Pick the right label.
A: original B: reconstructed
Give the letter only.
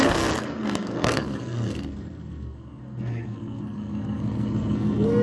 B